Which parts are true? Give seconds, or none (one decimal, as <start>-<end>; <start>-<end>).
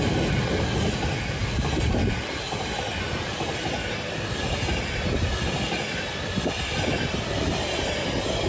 0.0-8.5